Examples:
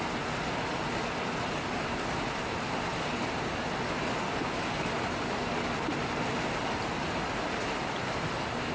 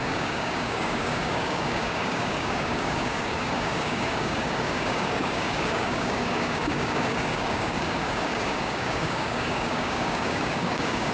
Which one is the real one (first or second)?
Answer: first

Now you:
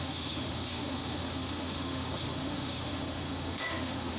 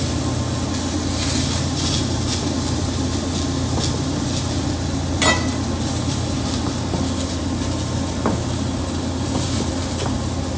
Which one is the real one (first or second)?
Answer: second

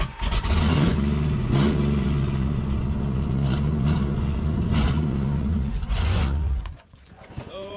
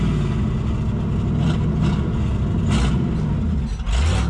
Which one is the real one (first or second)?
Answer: second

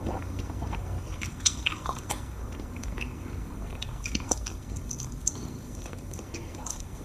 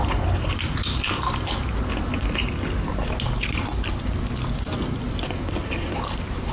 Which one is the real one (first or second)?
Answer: second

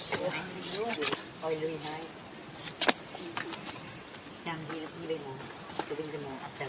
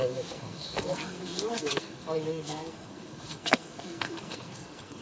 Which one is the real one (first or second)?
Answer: first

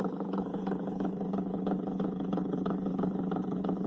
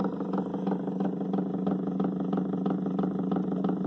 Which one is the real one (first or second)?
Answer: second